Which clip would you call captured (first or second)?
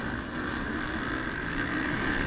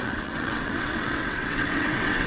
first